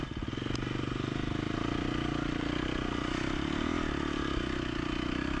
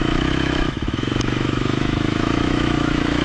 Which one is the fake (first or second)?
second